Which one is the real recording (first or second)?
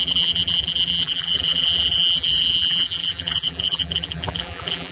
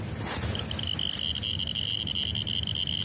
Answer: second